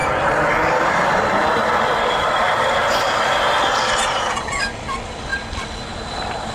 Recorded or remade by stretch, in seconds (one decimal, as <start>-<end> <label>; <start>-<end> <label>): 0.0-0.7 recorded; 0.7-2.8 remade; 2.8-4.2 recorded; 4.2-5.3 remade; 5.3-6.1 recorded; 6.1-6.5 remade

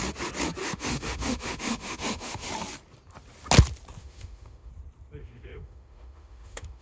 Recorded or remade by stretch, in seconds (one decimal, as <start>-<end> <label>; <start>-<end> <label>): 0.0-0.6 recorded; 0.6-2.5 remade; 2.5-4.0 recorded; 4.0-4.7 remade; 4.7-5.2 recorded; 5.2-6.8 remade

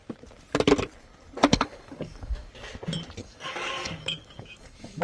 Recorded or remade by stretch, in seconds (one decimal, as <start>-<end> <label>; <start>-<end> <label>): 0.0-1.5 recorded; 1.5-2.5 remade; 2.5-3.2 recorded; 3.2-5.0 remade

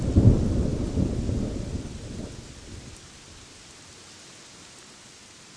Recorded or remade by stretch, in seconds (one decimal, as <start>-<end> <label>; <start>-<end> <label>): 0.0-5.6 recorded

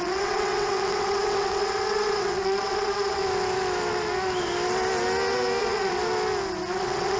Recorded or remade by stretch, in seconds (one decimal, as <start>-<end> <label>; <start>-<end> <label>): 0.0-3.2 remade; 3.2-5.6 recorded; 5.6-6.0 remade; 6.0-6.8 recorded; 6.8-7.2 remade